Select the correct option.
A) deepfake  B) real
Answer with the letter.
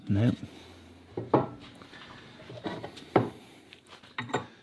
A